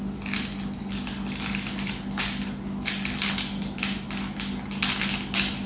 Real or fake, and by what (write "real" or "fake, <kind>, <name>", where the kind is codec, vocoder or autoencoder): real